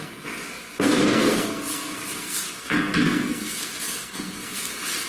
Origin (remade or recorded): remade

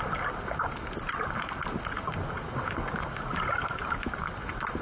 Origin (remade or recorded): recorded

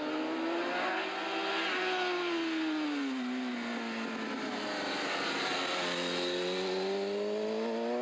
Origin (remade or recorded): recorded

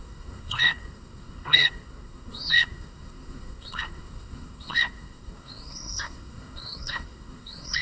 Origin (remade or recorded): remade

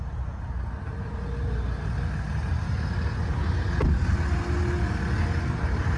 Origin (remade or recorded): recorded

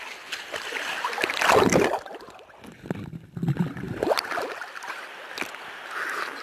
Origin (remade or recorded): recorded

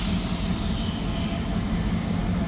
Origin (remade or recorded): recorded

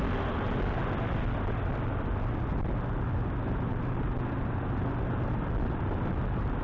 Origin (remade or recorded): recorded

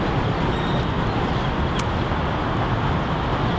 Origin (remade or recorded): recorded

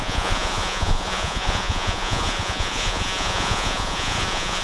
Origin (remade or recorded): remade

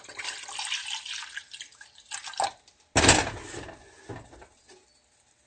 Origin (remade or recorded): recorded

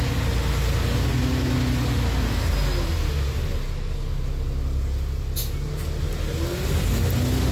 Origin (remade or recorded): recorded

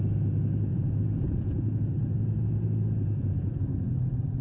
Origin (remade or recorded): remade